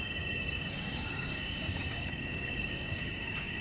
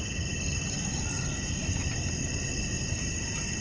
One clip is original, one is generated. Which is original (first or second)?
second